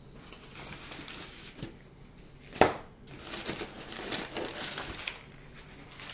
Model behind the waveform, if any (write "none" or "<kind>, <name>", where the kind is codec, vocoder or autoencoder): none